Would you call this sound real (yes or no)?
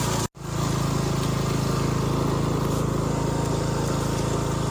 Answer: yes